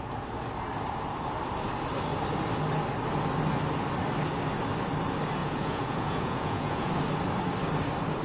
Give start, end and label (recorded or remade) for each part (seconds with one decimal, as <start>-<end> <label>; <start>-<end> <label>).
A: 0.0-5.4 recorded; 5.4-6.9 remade; 6.9-8.2 recorded